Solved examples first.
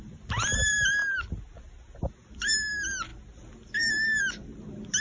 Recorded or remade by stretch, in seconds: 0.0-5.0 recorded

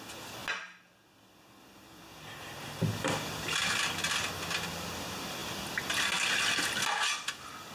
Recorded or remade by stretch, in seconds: 0.0-7.7 recorded

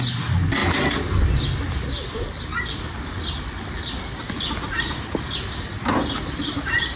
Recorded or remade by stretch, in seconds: 0.0-7.0 recorded

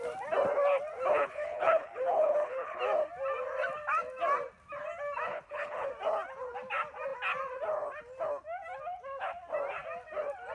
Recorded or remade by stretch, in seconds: 0.0-1.1 recorded; 1.1-2.8 remade; 2.8-5.3 recorded; 5.3-5.9 remade; 5.9-10.5 recorded

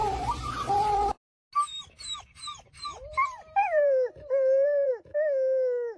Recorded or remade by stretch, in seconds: 0.0-0.5 remade; 0.5-1.7 recorded; 1.7-4.9 remade; 4.9-6.0 recorded

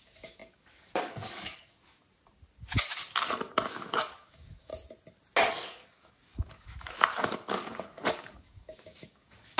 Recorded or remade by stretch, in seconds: 0.0-2.0 remade; 2.0-3.7 recorded; 3.7-4.7 remade; 4.7-5.5 recorded; 5.5-9.6 remade

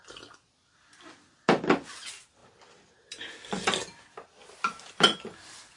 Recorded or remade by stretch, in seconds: 0.0-5.8 recorded

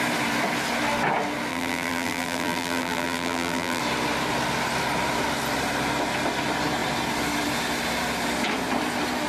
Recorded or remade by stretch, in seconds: 0.0-1.5 recorded; 1.5-3.8 remade; 3.8-9.3 recorded